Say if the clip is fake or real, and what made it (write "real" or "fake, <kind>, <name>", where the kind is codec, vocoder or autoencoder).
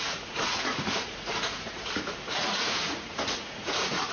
fake, vocoder, Vocos